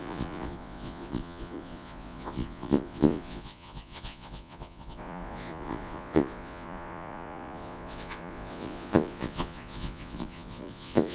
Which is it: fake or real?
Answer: fake